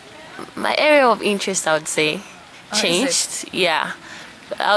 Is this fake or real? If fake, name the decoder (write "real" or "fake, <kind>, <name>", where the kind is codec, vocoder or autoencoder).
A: real